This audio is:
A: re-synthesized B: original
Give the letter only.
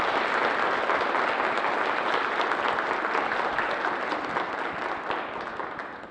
B